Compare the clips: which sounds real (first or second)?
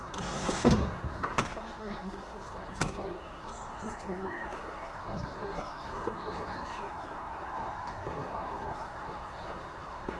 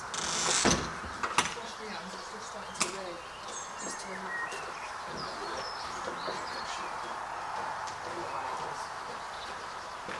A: second